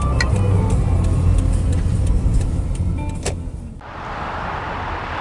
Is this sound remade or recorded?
recorded